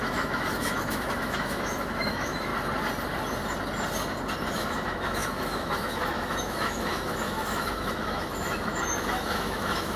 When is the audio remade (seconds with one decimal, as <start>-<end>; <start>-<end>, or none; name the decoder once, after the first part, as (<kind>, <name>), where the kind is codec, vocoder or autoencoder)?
0.0-2.5 (autoencoder, DAC-VAE); 4.5-10.0